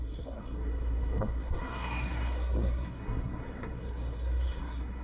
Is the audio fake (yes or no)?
yes